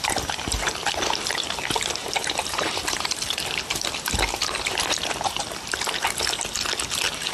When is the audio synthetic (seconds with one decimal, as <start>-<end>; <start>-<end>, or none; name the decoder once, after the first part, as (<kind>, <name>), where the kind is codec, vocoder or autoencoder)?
2.0-3.2 (vocoder, BigVGAN v2)